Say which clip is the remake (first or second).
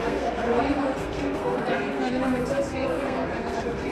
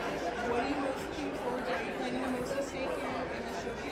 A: first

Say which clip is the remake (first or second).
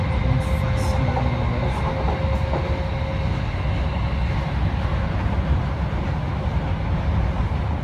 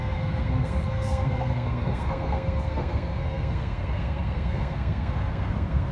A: second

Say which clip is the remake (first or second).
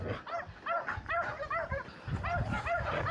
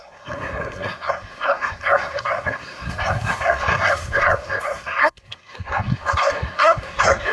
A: second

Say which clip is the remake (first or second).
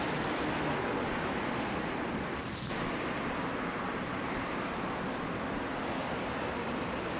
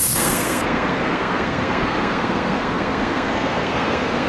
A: second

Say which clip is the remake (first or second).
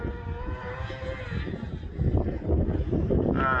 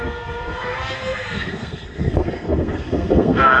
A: second